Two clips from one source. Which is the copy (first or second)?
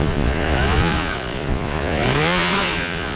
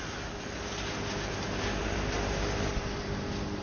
first